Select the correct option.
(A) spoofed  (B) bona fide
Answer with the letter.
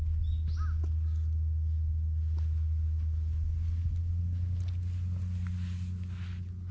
B